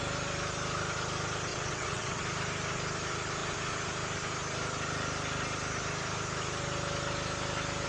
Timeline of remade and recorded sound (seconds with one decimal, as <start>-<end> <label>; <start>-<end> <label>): 0.0-1.5 recorded; 1.5-2.2 remade; 2.2-7.9 recorded